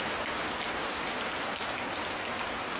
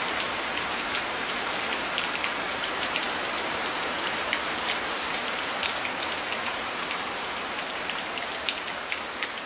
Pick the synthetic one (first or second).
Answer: second